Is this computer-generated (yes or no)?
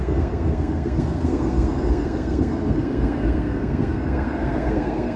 yes